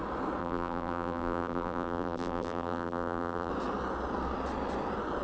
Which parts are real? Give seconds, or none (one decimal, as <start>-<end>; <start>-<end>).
0.0-0.4; 3.5-5.2